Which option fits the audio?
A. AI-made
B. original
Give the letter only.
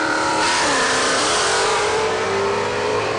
A